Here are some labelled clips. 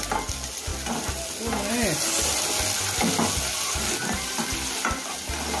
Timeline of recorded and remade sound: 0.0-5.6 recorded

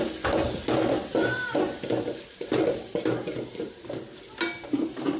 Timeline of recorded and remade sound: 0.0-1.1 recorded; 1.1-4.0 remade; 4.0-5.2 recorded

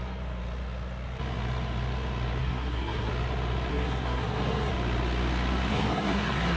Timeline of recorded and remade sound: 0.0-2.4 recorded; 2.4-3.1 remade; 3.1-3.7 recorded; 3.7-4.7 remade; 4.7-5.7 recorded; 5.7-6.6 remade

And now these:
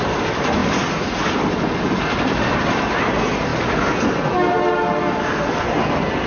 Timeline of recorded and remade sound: 0.0-6.3 recorded